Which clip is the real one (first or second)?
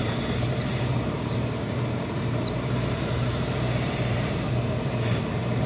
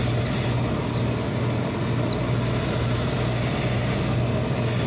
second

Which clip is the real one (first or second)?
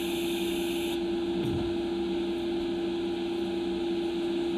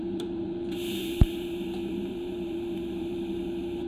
first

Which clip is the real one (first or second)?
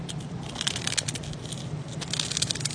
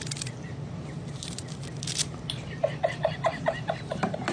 first